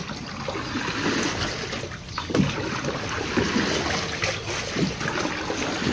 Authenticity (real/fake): real